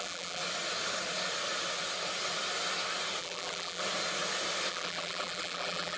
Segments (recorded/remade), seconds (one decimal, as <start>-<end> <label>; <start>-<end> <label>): 0.0-0.4 remade; 0.4-3.2 recorded; 3.2-3.8 remade; 3.8-4.7 recorded; 4.7-6.0 remade